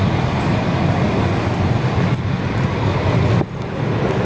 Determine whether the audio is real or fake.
real